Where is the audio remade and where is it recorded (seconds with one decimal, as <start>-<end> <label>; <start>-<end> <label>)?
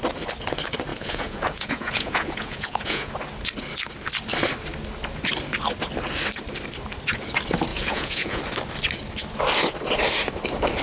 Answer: 0.0-0.9 recorded; 0.9-3.1 remade; 3.1-7.7 recorded; 7.7-8.4 remade; 8.4-10.8 recorded